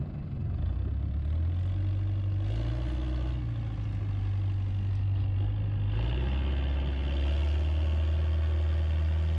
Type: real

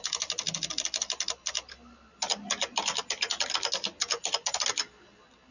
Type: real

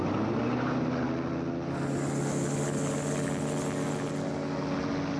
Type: real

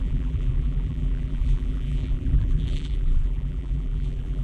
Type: fake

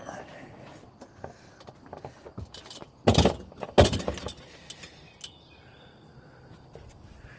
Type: real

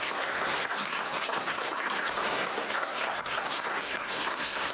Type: fake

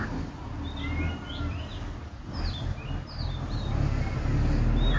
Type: real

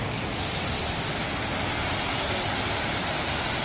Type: real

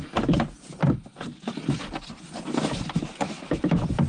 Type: real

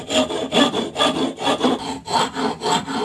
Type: real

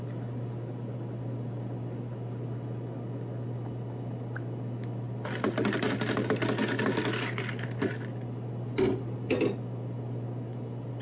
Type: real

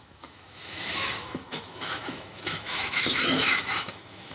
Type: fake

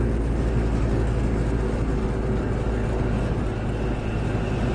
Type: real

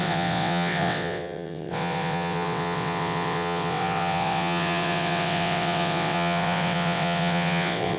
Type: fake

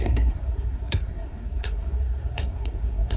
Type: fake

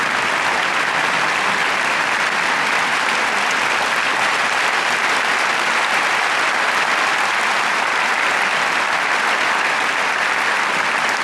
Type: real